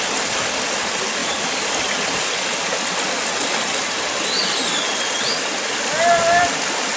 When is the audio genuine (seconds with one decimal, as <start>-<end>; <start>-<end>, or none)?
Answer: 0.0-7.0